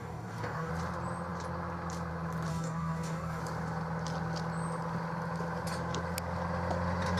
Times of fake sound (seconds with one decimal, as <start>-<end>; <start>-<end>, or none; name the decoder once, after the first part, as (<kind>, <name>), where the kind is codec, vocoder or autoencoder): 0.0-0.7 (codec, DAC); 2.5-3.4